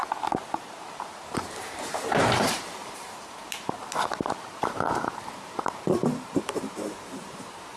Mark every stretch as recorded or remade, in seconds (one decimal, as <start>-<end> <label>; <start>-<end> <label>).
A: 0.0-1.0 recorded; 1.0-7.8 remade

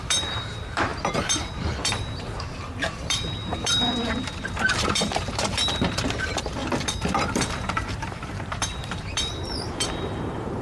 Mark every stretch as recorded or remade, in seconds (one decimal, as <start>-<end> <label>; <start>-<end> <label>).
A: 0.0-10.6 remade

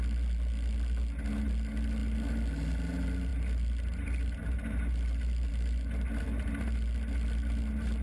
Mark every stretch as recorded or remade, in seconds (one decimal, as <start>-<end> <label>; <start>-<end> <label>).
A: 0.0-8.0 recorded

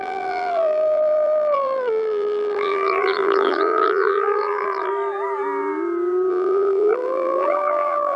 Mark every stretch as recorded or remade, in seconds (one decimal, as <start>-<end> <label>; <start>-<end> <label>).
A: 0.0-4.9 remade; 4.9-6.3 recorded; 6.3-8.2 remade

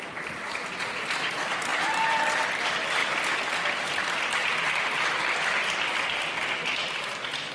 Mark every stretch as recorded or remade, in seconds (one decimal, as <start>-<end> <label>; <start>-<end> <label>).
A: 0.0-1.7 recorded; 1.7-2.4 remade; 2.4-3.0 recorded; 3.0-4.5 remade; 4.5-6.4 recorded; 6.4-7.5 remade

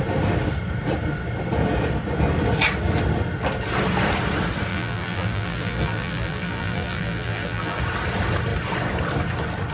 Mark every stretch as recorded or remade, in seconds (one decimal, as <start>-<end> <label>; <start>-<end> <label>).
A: 0.0-4.7 recorded; 4.7-7.8 remade; 7.8-9.7 recorded